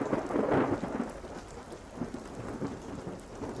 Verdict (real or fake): real